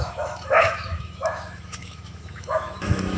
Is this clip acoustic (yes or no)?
no